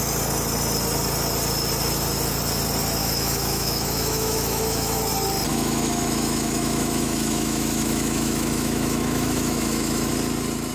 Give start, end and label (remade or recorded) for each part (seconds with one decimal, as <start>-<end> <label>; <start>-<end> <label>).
0.0-3.0 recorded; 3.0-5.0 remade; 5.0-5.5 recorded; 5.5-10.1 remade; 10.1-10.7 recorded